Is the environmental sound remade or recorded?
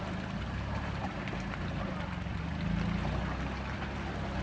recorded